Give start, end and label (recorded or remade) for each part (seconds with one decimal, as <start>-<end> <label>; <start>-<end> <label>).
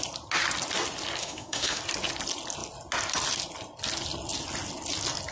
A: 0.0-1.2 recorded; 1.2-1.8 remade; 1.8-5.3 recorded